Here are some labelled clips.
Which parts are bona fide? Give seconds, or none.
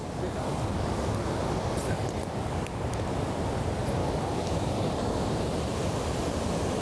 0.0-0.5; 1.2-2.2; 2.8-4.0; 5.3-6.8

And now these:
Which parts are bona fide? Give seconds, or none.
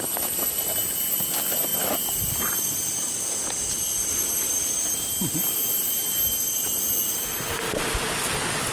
0.0-8.7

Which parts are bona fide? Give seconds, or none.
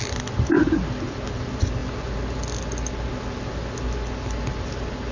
0.0-5.1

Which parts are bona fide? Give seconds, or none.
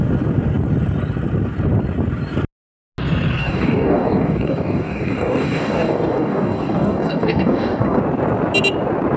0.0-3.4; 8.0-9.2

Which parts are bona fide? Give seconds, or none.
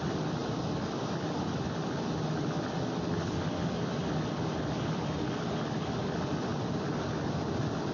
0.0-7.9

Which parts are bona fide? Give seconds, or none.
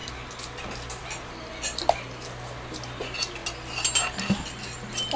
0.0-5.2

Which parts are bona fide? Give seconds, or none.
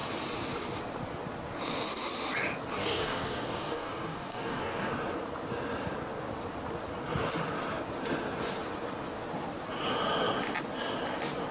0.0-2.8; 4.9-11.5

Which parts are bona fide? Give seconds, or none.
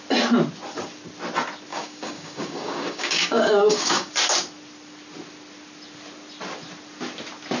0.0-1.7; 4.1-7.6